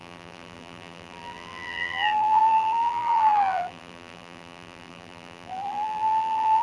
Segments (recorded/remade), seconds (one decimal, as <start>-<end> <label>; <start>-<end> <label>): 0.0-6.6 remade